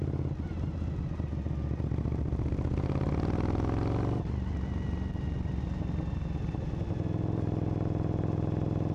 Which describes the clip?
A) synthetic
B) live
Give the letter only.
B